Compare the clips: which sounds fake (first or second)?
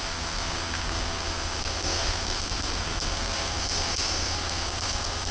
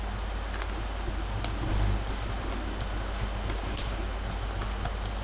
first